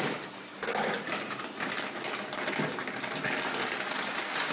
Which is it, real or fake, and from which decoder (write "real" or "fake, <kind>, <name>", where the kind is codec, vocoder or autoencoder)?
real